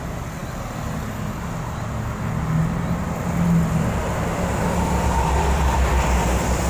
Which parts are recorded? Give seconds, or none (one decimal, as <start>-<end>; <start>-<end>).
0.0-6.7